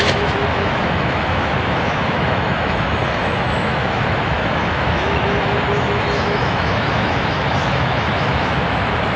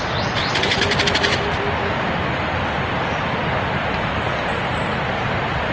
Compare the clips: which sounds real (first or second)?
second